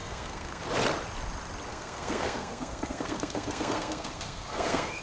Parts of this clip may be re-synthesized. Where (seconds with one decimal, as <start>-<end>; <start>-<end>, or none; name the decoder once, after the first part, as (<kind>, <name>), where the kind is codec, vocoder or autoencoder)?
0.0-0.6 (codec, SNAC); 1.7-5.0